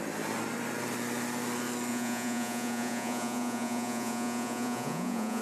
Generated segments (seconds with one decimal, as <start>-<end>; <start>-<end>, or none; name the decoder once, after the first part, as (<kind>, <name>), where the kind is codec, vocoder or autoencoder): 1.9-5.4 (vocoder, Vocos)